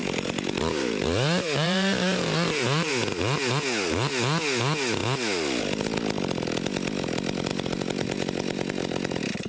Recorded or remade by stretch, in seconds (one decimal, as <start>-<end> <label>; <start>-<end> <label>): 0.0-2.9 remade; 2.9-7.5 recorded; 7.5-9.5 remade